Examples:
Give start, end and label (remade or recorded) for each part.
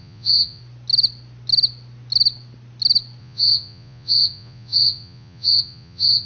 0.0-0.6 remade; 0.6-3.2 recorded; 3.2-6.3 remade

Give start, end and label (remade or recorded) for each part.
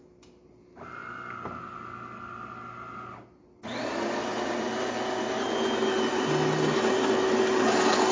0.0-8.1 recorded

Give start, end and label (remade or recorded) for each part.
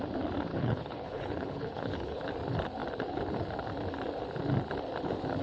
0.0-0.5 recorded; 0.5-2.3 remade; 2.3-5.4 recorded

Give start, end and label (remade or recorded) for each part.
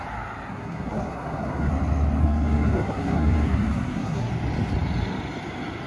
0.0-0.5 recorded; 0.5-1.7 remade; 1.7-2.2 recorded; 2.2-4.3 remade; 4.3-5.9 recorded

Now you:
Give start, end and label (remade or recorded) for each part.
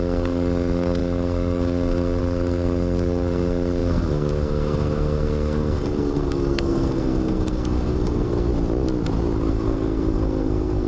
0.0-8.5 remade; 8.5-9.5 recorded; 9.5-10.9 remade